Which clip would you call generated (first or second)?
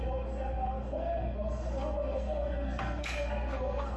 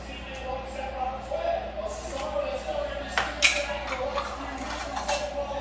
first